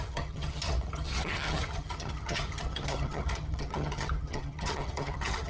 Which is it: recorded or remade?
remade